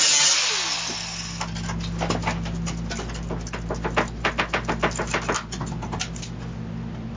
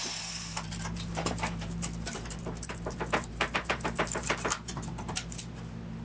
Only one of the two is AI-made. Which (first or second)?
second